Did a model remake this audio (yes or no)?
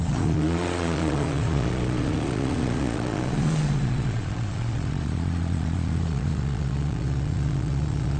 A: yes